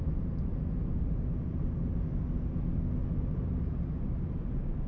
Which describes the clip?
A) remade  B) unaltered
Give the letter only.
B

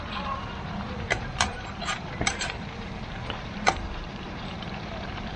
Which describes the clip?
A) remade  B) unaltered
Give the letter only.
A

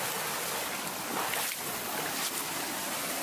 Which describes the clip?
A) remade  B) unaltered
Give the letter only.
B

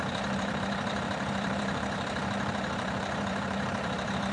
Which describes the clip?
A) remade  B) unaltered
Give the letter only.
A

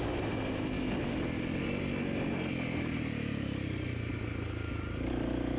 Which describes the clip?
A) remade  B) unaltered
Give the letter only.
B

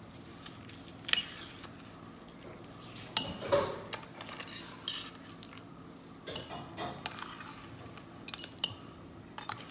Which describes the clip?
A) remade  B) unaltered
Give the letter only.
B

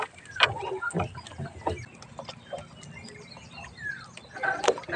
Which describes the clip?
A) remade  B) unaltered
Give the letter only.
B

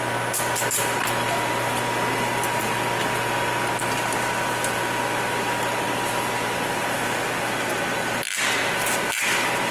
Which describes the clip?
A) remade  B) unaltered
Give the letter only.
B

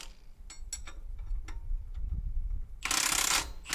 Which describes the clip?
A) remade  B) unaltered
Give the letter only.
B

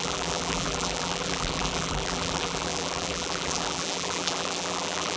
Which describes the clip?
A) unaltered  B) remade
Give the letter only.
B